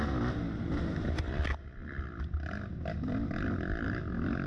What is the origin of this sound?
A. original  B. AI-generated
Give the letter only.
A